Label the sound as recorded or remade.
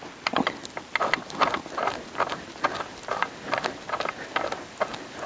recorded